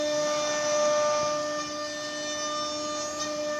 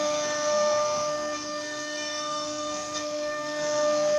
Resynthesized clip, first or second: second